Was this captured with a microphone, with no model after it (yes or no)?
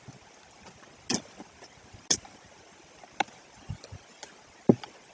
yes